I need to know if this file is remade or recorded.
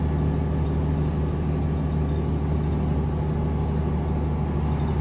recorded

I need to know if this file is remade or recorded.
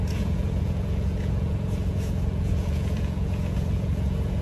remade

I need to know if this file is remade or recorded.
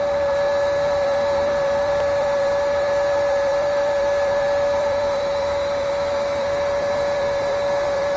remade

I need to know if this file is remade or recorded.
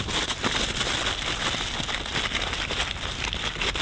recorded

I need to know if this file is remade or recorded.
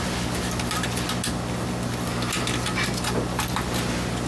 recorded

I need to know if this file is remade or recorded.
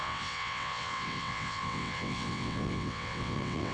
remade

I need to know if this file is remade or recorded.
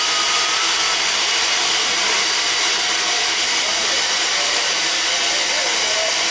recorded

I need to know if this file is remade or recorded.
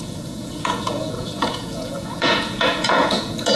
remade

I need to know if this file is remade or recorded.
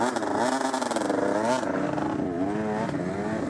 recorded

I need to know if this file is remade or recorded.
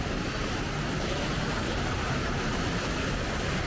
recorded